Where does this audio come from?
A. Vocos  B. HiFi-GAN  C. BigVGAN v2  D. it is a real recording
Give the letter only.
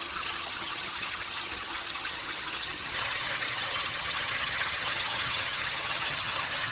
B